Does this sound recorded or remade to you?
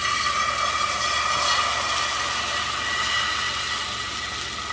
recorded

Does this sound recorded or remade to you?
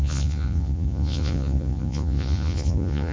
remade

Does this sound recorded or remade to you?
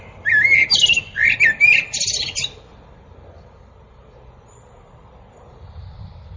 recorded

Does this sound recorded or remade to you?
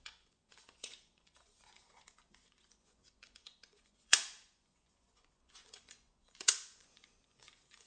remade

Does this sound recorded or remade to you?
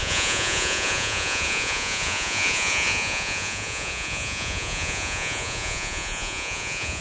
remade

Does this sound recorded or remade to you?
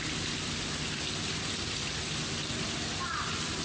recorded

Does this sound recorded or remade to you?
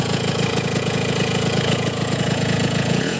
remade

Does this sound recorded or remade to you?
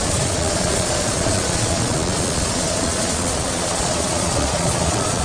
remade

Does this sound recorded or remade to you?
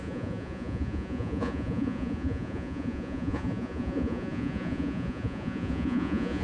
remade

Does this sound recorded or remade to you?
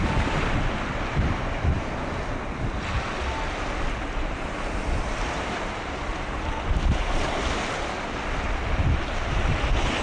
recorded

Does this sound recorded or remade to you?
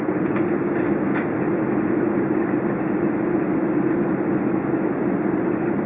recorded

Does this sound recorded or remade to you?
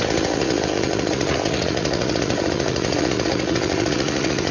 remade